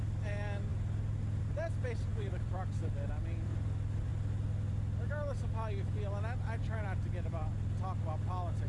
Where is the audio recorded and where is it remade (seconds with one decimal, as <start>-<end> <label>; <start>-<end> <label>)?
0.0-2.1 recorded; 2.1-2.7 remade; 2.7-6.8 recorded; 6.8-7.5 remade; 7.5-8.7 recorded